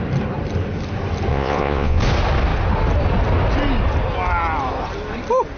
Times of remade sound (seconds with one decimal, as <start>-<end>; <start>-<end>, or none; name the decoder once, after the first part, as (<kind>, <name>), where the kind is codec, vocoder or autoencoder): 1.3-2.0 (vocoder, Vocos)